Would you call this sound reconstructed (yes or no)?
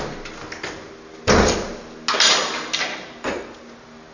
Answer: no